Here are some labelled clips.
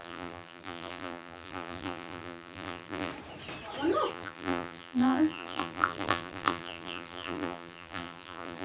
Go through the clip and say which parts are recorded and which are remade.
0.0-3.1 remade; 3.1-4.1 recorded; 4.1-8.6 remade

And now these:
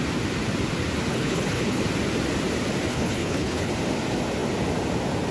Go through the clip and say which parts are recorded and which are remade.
0.0-1.1 recorded; 1.1-1.8 remade; 1.8-2.9 recorded; 2.9-3.7 remade; 3.7-5.3 recorded

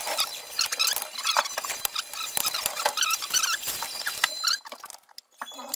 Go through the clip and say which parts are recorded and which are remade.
0.0-5.8 recorded

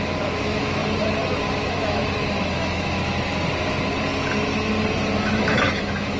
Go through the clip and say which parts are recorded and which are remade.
0.0-0.8 remade; 0.8-1.5 recorded; 1.5-3.0 remade; 3.0-5.2 recorded; 5.2-6.2 remade

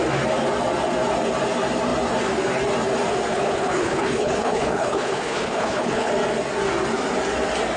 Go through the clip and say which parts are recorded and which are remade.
0.0-3.3 recorded; 3.3-6.1 remade; 6.1-7.8 recorded

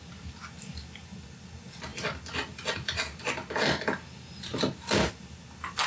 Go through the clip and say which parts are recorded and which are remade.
0.0-5.9 recorded